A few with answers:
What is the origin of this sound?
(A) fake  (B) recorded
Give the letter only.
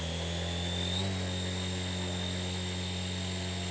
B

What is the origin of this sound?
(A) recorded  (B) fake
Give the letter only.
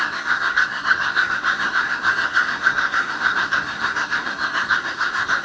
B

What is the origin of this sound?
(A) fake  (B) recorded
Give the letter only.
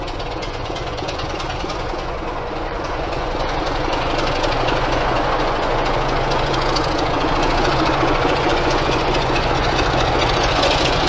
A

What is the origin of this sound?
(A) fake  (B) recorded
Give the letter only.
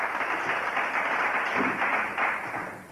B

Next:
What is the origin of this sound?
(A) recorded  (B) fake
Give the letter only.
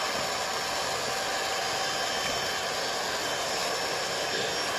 A